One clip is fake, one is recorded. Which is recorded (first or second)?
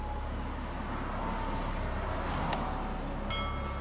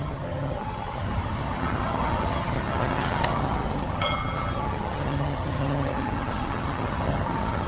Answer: first